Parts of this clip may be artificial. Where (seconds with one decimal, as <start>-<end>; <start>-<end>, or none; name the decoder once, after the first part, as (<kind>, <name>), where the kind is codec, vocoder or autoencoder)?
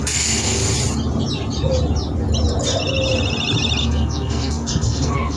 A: 0.0-0.6 (codec, SNAC); 3.8-5.4